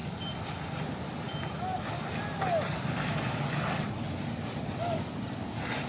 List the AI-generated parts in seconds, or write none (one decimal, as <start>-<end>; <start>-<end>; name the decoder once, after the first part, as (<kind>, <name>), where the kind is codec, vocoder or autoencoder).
3.5-5.9 (vocoder, BigVGAN v2)